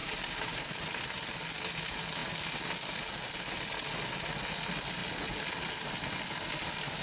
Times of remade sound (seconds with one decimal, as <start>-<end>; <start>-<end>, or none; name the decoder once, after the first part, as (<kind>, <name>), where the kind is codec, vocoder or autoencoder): 0.0-0.8 (vocoder, BigVGAN v2)